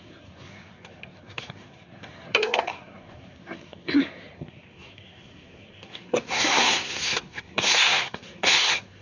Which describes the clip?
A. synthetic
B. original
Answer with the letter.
A